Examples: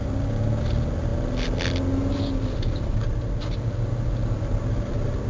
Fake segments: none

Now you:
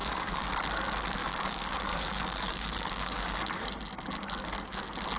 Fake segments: 0.0-0.5 (codec, DAC); 1.2-3.4